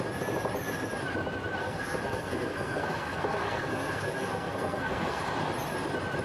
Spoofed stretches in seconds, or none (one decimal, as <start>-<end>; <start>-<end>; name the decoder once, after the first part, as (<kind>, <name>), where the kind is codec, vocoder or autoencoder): 1.6-5.2 (codec, SNAC)